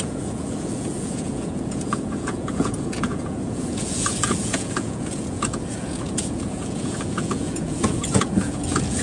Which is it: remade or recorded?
remade